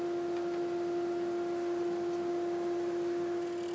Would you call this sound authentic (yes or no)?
yes